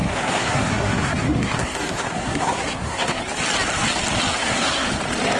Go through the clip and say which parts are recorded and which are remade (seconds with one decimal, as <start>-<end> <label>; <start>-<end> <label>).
0.0-3.2 remade; 3.2-4.4 recorded; 4.4-4.9 remade; 4.9-5.4 recorded